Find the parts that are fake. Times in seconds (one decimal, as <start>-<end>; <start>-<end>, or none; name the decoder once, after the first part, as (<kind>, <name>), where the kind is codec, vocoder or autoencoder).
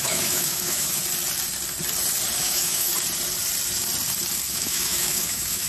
0.0-1.0 (autoencoder, DAC-VAE); 2.4-2.9; 4.5-5.7